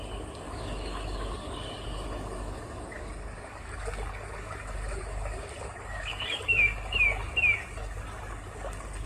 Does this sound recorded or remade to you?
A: remade